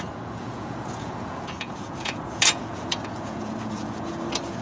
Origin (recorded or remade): remade